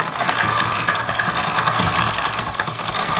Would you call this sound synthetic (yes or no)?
yes